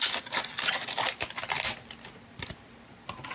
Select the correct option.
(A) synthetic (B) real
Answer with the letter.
B